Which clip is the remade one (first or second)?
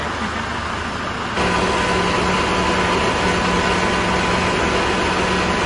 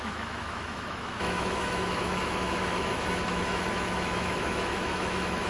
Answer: second